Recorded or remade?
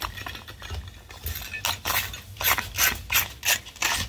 recorded